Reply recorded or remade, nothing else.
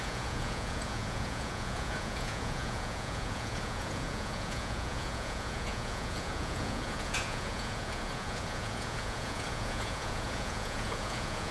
remade